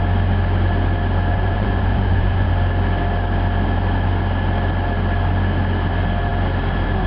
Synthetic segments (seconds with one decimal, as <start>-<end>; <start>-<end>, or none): 1.3-2.5